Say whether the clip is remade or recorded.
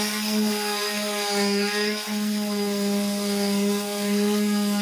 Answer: remade